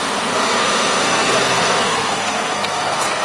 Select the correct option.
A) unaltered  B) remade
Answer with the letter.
B